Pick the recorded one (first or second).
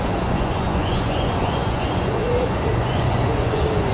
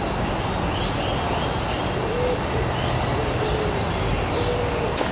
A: second